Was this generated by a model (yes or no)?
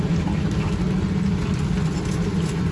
no